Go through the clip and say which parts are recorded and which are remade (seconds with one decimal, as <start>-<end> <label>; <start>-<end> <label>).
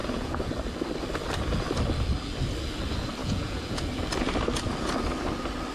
0.0-0.5 remade; 0.5-3.2 recorded; 3.2-3.8 remade; 3.8-5.7 recorded